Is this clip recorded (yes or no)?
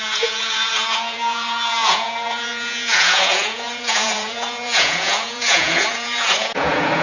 no